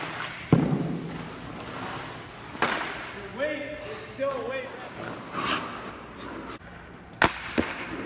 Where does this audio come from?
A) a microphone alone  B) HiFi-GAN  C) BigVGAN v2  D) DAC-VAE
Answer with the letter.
A